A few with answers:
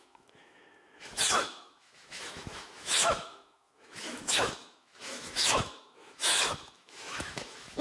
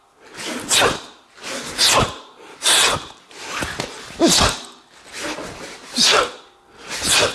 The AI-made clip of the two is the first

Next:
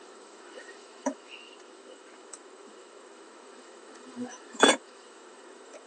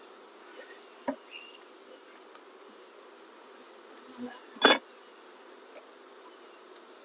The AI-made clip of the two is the first